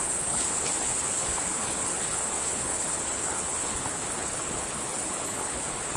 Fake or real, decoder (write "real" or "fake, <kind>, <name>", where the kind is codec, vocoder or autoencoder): fake, codec, HILCodec